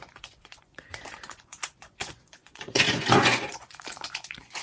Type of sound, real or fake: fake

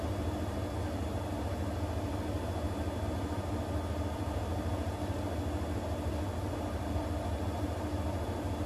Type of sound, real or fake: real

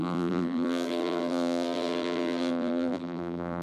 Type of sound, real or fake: fake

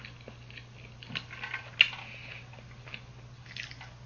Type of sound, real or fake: real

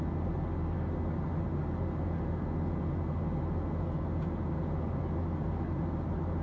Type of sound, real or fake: real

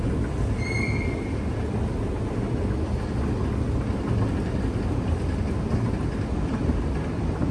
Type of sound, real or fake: real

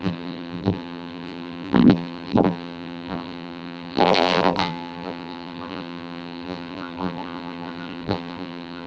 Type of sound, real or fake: fake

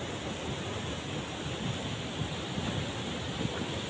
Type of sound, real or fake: real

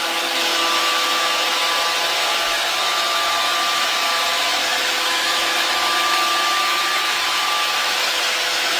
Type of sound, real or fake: fake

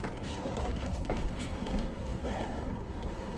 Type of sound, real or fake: fake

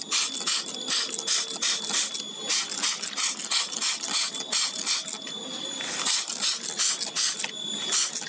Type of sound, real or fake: real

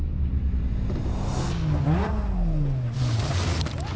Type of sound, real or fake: real